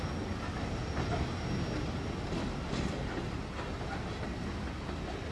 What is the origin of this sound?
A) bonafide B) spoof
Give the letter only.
A